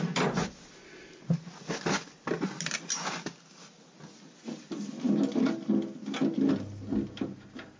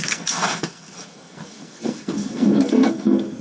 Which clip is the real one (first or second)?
first